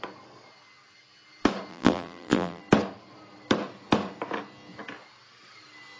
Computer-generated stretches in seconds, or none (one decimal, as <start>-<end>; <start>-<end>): 1.7-2.6